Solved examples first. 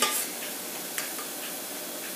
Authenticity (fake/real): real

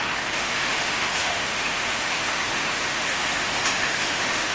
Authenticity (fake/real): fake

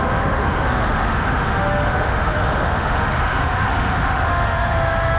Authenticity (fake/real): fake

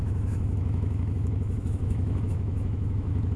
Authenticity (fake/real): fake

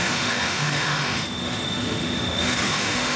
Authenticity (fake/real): fake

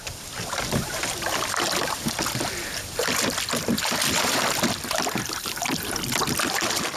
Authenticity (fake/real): real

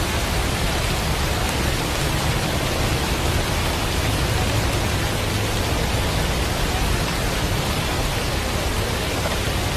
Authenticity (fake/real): real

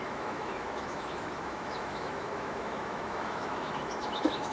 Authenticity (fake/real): fake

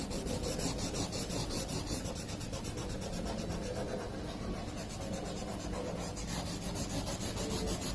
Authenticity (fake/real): real